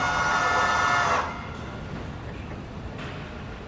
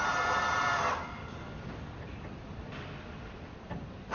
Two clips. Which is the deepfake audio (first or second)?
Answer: second